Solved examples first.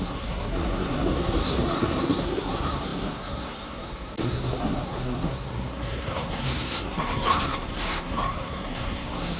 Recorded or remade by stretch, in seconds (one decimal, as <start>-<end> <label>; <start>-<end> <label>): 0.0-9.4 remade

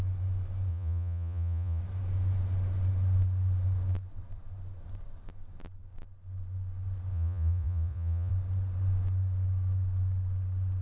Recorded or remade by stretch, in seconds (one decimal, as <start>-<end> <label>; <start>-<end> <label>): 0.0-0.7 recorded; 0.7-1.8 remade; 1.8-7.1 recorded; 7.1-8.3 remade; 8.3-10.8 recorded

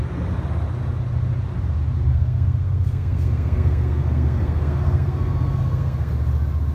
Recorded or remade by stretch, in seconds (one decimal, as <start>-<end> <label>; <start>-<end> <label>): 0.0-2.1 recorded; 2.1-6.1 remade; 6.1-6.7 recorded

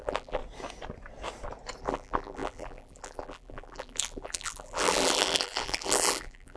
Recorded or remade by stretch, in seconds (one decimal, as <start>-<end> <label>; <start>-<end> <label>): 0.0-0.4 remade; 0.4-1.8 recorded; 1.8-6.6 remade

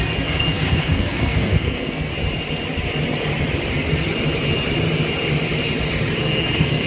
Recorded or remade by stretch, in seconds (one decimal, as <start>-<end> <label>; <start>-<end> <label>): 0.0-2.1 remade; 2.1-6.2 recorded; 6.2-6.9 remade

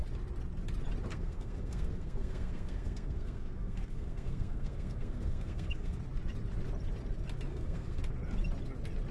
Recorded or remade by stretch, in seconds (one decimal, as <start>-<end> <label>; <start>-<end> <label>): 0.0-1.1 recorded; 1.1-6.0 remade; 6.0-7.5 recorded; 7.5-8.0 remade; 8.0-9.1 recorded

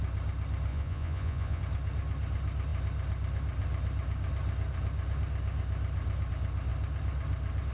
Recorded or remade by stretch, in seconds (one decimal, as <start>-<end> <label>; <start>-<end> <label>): 0.0-0.7 recorded; 0.7-1.6 remade; 1.6-7.7 recorded

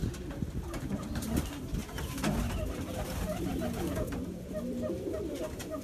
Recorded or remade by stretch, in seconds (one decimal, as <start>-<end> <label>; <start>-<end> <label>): 0.0-1.0 recorded; 1.0-1.8 remade; 1.8-5.3 recorded; 5.3-5.8 remade